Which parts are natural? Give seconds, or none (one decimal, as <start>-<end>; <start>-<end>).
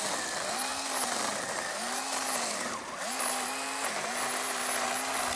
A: 0.0-5.4